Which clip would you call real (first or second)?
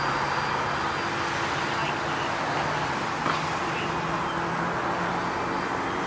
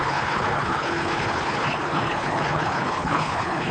first